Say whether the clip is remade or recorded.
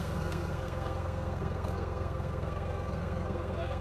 remade